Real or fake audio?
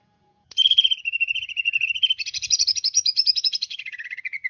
fake